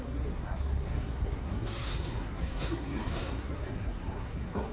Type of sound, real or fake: fake